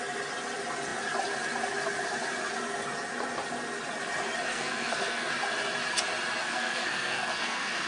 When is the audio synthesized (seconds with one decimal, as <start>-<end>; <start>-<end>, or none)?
4.5-5.3; 6.4-7.9